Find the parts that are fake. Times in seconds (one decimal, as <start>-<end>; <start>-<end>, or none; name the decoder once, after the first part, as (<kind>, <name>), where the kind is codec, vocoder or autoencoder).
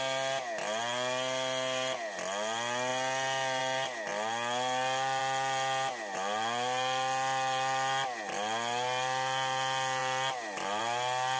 none